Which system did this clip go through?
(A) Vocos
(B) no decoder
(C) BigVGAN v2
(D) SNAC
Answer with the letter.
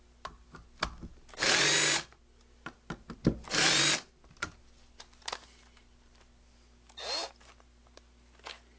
B